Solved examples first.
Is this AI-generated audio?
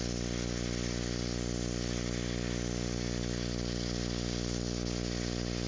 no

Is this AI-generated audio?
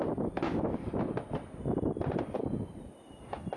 no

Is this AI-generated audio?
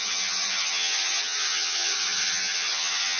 yes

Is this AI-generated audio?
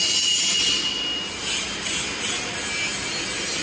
no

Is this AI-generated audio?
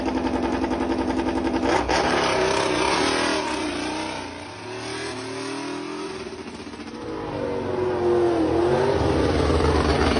no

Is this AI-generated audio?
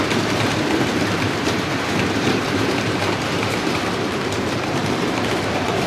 yes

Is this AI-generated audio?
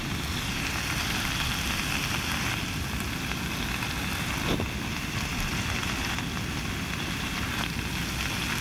no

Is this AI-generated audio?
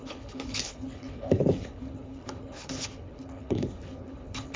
yes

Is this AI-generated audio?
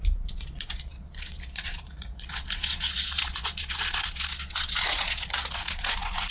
yes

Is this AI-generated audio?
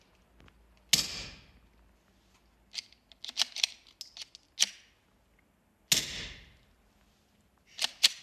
no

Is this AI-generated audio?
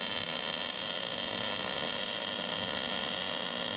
no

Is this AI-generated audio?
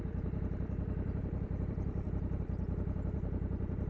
yes